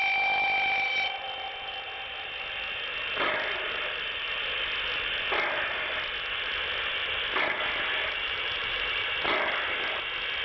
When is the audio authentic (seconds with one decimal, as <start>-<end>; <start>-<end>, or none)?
0.0-8.0; 9.1-10.4